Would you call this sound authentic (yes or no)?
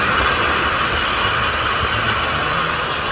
yes